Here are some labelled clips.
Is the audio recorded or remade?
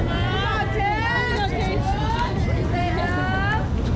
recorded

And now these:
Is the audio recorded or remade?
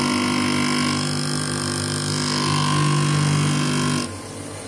recorded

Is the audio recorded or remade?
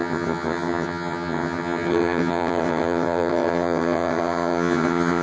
remade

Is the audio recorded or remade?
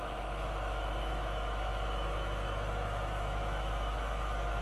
remade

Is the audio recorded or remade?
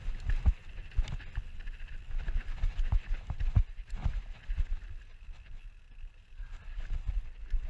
recorded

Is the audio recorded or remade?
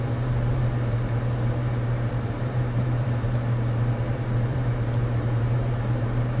remade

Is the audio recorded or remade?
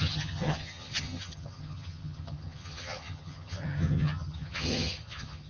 remade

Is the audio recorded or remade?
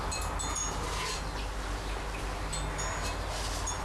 recorded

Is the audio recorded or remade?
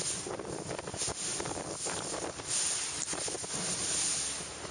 remade